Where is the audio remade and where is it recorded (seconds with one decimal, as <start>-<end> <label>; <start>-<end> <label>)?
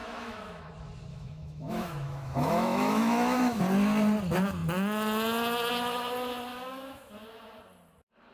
0.0-0.7 remade; 0.7-1.1 recorded; 1.1-3.6 remade; 3.6-6.5 recorded; 6.5-7.1 remade; 7.1-8.3 recorded